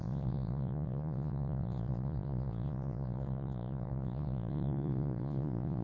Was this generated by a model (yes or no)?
yes